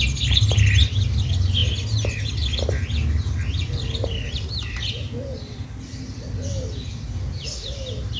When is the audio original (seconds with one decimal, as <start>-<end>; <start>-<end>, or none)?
0.0-8.2